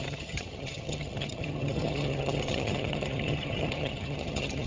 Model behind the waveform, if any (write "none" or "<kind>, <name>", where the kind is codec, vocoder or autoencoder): vocoder, HiFi-GAN